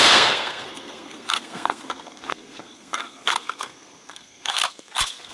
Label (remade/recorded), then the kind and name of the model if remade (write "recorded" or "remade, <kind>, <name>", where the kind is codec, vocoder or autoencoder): remade, codec, SNAC